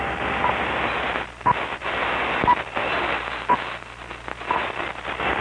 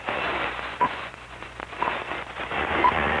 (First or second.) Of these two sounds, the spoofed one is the second